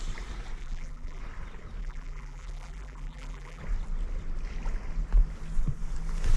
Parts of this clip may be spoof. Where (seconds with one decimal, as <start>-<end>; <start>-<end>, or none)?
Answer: 0.6-1.2; 1.8-3.6